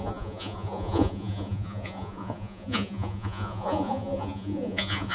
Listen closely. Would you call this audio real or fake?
fake